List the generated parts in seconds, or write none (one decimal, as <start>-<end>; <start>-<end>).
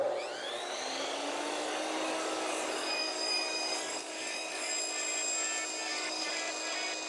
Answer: 0.4-4.7; 5.8-6.3